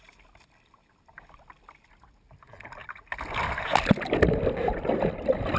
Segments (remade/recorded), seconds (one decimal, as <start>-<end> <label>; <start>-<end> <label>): 0.0-5.6 recorded